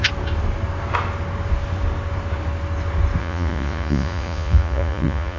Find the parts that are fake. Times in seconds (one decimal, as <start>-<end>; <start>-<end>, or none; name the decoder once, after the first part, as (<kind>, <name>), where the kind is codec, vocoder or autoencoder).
3.2-5.4 (vocoder, Vocos)